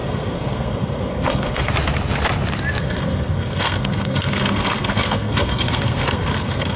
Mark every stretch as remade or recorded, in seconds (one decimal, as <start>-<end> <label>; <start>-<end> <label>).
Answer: 0.0-1.6 remade; 1.6-2.8 recorded; 2.8-6.8 remade